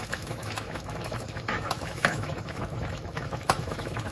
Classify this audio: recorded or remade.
remade